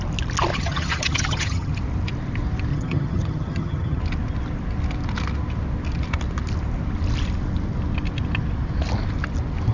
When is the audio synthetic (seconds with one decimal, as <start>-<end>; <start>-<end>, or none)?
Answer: 0.5-1.7; 2.7-4.0